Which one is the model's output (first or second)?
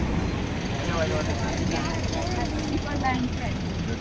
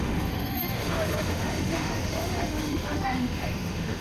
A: second